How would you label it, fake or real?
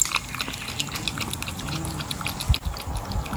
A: real